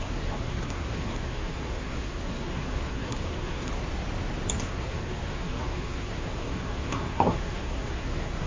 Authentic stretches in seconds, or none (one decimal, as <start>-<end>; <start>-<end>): 3.7-4.6